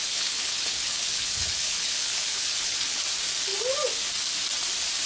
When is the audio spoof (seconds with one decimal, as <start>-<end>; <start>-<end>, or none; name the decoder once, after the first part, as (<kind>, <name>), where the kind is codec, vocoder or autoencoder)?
0.0-3.0 (codec, HILCodec)